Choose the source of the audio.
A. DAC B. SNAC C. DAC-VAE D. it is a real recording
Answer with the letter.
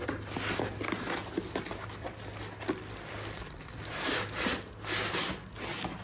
D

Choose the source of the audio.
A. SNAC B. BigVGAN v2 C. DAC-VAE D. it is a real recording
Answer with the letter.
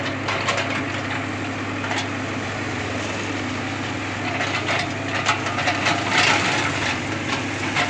D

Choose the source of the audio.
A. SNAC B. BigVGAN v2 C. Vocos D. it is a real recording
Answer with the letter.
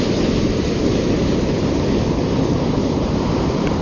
D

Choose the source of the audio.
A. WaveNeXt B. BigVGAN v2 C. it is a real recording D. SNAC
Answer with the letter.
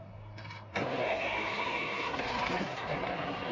D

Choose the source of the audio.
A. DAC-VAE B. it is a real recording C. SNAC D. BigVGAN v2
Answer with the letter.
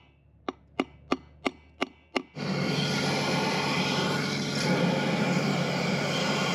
B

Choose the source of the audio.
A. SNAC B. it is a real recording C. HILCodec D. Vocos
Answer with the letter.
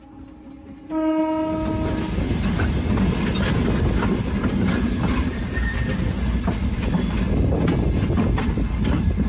B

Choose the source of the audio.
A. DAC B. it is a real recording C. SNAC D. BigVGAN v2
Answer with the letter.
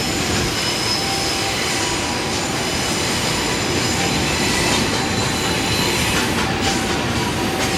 B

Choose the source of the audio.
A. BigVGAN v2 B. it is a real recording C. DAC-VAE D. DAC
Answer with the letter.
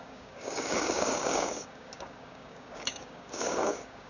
D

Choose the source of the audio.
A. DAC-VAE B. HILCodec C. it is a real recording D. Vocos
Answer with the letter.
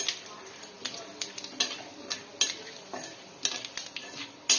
C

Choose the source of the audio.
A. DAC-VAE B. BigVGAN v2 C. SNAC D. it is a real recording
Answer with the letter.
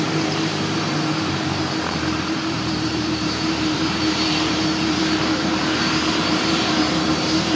B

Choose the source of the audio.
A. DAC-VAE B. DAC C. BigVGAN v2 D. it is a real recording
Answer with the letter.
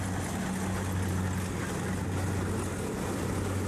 D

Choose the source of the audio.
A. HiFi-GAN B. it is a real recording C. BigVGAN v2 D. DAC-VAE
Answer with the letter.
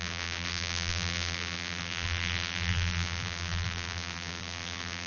C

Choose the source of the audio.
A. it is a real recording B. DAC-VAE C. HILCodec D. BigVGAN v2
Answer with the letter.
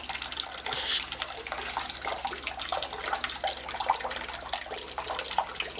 A